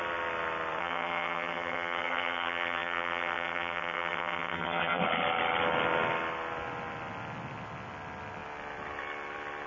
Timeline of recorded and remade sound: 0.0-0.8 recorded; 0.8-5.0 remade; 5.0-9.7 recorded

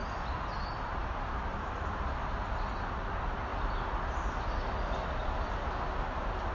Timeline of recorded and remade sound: 0.0-6.5 recorded

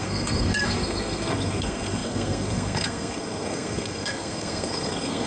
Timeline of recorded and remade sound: 0.0-5.3 remade

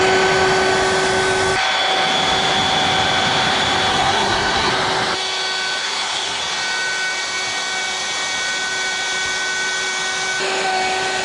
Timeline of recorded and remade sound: 0.0-3.9 recorded; 3.9-4.7 remade; 4.7-5.8 recorded; 5.8-6.4 remade; 6.4-11.2 recorded

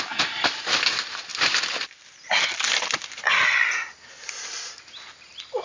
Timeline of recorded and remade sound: 0.0-5.6 recorded

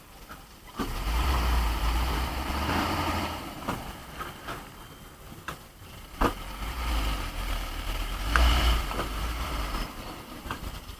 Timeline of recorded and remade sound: 0.0-4.0 remade; 4.0-5.3 recorded; 5.3-11.0 remade

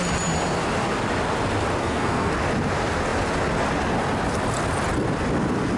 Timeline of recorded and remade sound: 0.0-1.8 recorded; 1.8-2.3 remade; 2.3-5.8 recorded

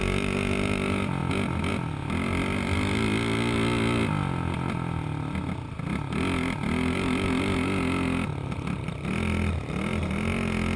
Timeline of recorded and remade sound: 0.0-10.8 recorded